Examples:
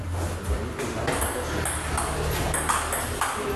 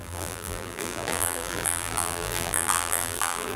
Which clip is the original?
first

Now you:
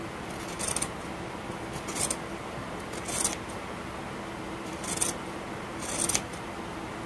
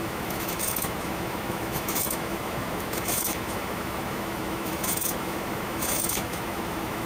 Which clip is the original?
first